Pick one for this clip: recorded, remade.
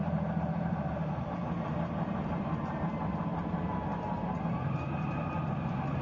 remade